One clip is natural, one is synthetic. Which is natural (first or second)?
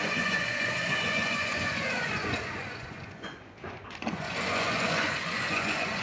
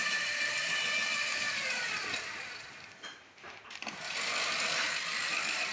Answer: second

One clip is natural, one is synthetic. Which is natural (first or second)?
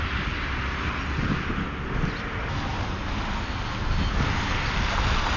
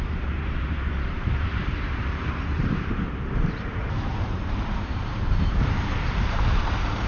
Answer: first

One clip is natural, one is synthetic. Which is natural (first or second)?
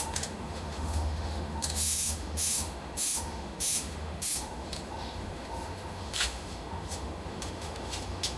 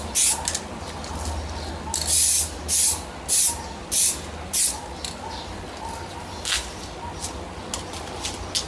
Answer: second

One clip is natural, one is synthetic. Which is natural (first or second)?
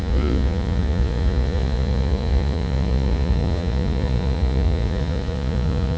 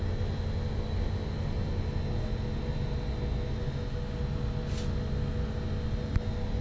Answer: second